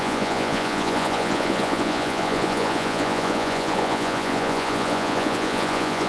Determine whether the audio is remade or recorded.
remade